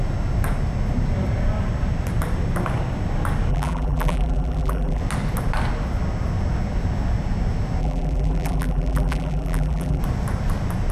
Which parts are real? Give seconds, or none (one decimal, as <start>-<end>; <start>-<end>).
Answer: 0.0-3.5; 5.0-7.8; 10.0-10.9